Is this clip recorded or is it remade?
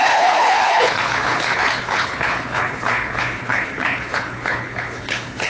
remade